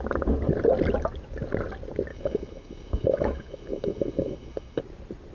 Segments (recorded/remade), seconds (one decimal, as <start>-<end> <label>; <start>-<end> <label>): 0.0-2.1 recorded; 2.1-4.8 remade; 4.8-5.3 recorded

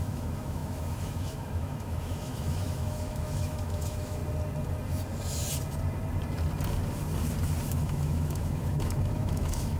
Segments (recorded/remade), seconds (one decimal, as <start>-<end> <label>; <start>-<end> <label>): 0.0-4.2 remade; 4.2-7.7 recorded; 7.7-9.8 remade